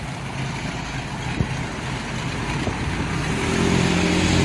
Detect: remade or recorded recorded